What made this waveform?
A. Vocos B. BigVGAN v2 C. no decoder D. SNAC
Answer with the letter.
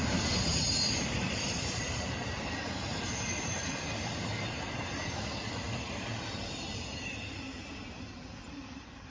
B